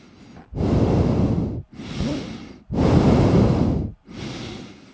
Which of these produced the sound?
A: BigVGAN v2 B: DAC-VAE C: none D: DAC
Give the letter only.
C